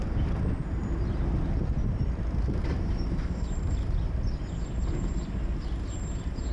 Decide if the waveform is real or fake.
real